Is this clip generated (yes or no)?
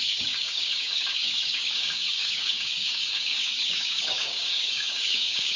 yes